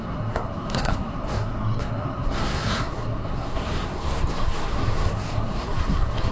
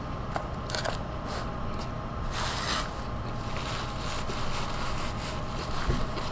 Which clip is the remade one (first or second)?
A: first